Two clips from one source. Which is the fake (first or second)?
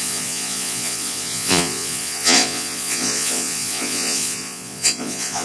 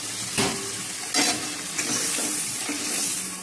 first